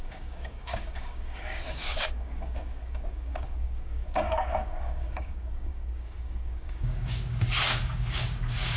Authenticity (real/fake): fake